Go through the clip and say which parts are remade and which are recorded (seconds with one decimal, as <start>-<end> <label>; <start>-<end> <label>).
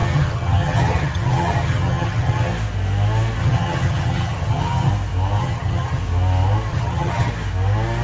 0.0-2.5 remade; 2.5-3.4 recorded; 3.4-4.9 remade; 4.9-5.4 recorded; 5.4-6.0 remade; 6.0-6.7 recorded; 6.7-7.3 remade; 7.3-8.0 recorded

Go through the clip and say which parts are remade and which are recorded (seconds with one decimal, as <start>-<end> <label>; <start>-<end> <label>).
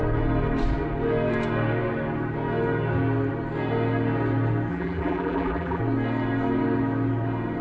0.0-4.7 recorded; 4.7-5.8 remade; 5.8-7.6 recorded